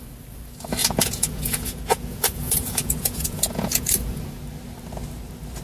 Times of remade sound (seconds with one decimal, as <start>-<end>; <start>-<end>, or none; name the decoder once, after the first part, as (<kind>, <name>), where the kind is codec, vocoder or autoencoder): 0.8-4.2 (vocoder, Vocos)